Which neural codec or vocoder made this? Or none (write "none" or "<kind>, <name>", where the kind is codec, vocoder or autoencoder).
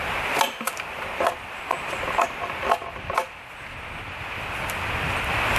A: none